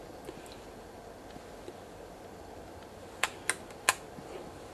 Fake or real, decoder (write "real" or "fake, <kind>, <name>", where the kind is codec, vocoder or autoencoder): real